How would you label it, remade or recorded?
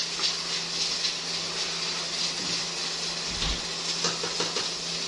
recorded